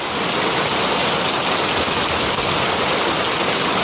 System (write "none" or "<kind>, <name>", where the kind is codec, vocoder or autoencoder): none